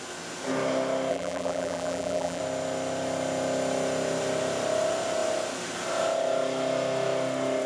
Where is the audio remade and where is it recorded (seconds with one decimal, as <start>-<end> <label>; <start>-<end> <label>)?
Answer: 0.0-1.1 recorded; 1.1-2.4 remade; 2.4-7.7 recorded